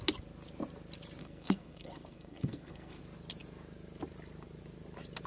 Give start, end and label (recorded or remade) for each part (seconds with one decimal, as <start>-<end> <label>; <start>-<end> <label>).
0.0-1.2 recorded; 1.2-3.0 remade; 3.0-5.3 recorded